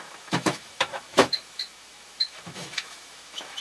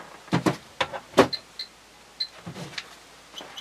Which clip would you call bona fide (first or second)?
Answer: second